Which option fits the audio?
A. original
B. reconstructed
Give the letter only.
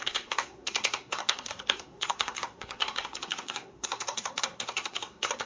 B